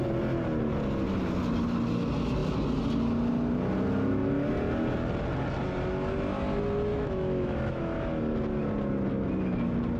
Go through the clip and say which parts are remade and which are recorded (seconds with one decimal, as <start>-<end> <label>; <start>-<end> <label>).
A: 0.0-6.9 recorded; 6.9-7.8 remade; 7.8-10.0 recorded